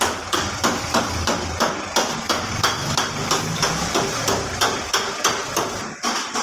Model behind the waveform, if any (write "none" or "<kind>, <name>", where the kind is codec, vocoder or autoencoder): none